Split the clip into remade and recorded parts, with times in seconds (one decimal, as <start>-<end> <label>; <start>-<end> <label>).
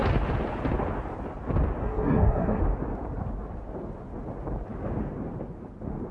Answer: 0.0-1.8 recorded; 1.8-2.6 remade; 2.6-6.1 recorded